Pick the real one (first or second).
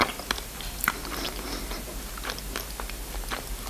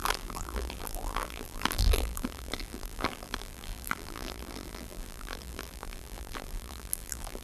first